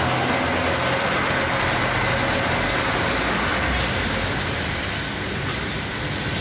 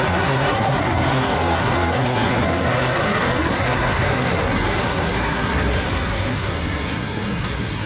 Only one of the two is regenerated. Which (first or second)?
second